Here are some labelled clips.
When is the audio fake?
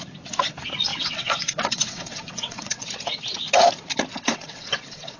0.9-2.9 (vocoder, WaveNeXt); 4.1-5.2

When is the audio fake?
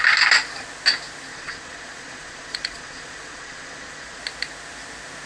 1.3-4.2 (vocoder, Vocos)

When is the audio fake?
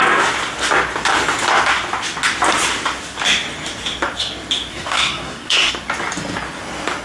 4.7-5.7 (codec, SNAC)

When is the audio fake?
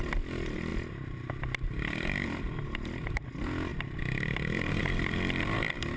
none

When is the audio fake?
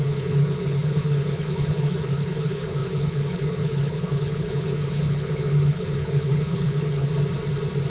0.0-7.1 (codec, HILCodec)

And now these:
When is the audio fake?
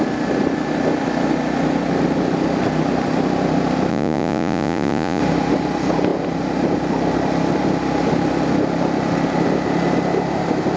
3.9-5.2 (vocoder, Vocos)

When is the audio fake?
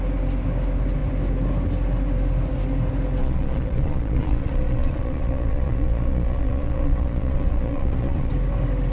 3.2-8.3 (vocoder, Vocos)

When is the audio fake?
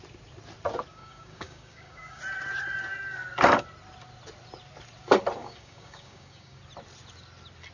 0.9-2.2 (codec, DAC); 5.4-6.6